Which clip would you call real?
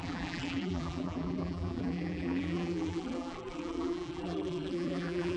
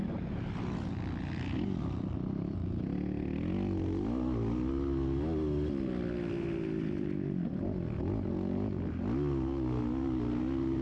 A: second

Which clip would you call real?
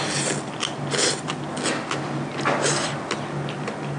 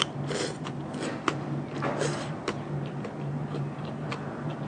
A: first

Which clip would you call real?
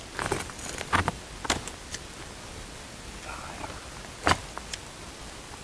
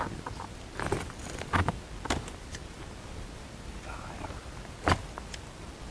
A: first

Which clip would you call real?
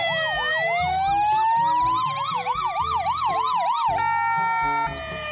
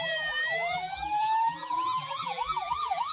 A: first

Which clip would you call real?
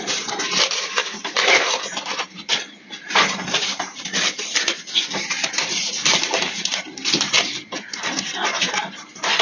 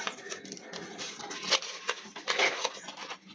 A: second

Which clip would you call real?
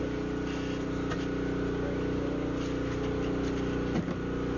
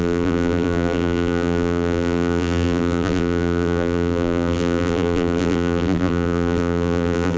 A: first